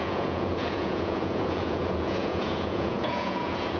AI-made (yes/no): yes